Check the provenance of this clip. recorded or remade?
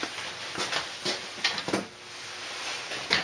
recorded